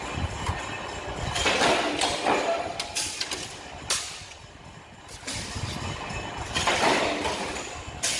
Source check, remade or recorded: recorded